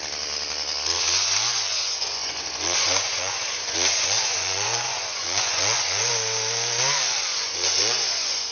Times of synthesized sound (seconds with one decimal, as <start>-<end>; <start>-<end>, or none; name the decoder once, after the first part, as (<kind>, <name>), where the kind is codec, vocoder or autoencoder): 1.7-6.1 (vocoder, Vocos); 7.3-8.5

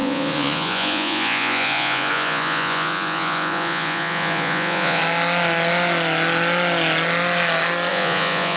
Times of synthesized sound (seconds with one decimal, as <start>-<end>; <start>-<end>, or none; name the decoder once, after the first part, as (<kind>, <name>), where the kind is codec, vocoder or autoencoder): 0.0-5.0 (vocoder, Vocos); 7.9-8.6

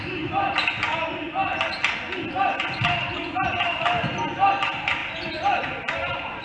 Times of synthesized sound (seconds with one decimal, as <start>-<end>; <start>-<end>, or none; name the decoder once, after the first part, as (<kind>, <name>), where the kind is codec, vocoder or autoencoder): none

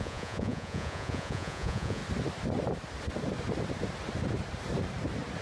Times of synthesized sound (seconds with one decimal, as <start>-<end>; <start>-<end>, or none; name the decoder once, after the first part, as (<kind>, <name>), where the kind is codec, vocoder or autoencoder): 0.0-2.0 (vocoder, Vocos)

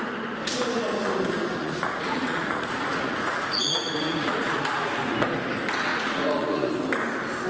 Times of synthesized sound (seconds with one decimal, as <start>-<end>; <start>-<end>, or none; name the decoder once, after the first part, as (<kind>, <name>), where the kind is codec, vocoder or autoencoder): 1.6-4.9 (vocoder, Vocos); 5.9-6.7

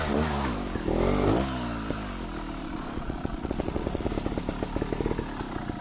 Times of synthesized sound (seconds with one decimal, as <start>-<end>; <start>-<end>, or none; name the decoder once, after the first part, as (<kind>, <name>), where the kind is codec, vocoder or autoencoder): 2.6-4.1 (vocoder, Vocos)

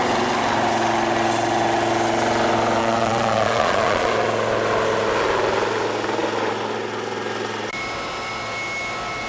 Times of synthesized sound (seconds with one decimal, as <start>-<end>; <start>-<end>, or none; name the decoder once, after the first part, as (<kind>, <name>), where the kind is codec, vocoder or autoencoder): 2.8-4.1 (vocoder, Vocos)

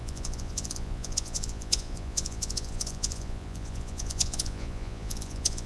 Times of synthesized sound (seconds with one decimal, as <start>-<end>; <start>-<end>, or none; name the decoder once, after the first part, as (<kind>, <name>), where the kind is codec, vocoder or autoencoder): 0.0-5.7 (vocoder, Vocos)